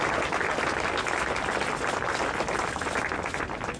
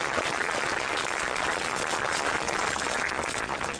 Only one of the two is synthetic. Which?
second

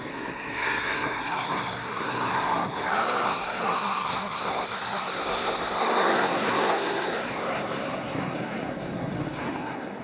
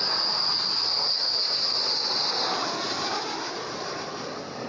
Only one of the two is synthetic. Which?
first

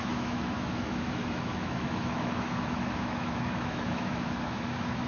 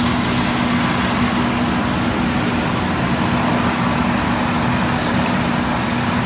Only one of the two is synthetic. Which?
first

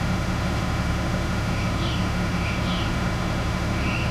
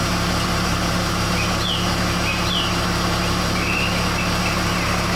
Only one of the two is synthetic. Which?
first